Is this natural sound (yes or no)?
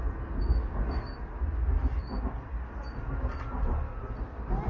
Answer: yes